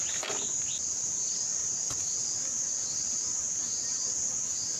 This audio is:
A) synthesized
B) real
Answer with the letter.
B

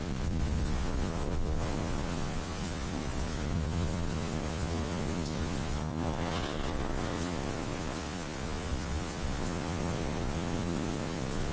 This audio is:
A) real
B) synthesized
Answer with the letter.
B